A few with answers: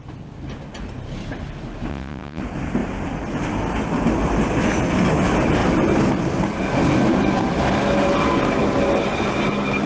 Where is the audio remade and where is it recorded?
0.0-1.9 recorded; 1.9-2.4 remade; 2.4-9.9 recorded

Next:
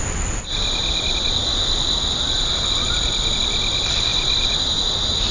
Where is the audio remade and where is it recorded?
0.0-5.3 recorded

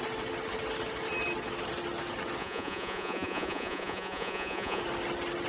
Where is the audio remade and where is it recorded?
0.0-2.4 recorded; 2.4-4.8 remade; 4.8-5.5 recorded